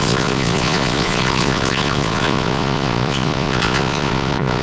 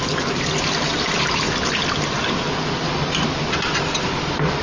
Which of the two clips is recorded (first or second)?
second